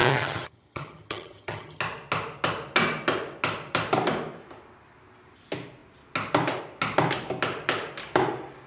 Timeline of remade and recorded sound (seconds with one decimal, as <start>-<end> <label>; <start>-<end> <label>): 0.0-1.8 remade; 1.8-8.7 recorded